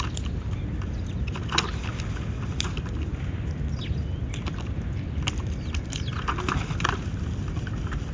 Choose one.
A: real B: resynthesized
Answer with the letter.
A